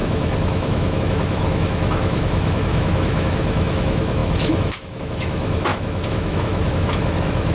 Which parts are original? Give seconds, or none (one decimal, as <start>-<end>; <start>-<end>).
none